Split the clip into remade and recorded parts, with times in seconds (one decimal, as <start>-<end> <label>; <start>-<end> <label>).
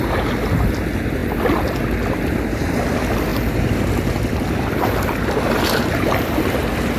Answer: 0.0-7.0 recorded